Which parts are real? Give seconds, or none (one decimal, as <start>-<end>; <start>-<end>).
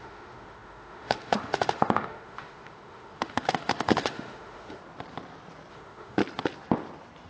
4.8-5.7; 6.2-7.3